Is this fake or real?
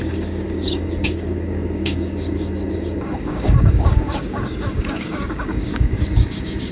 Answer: fake